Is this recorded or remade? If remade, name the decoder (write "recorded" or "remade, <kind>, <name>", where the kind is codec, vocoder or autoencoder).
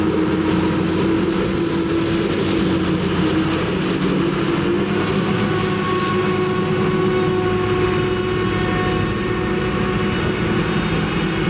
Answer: recorded